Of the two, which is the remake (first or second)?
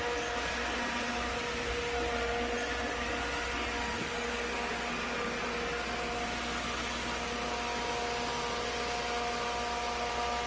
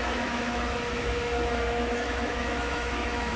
second